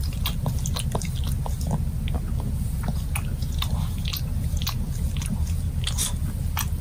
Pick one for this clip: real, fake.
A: real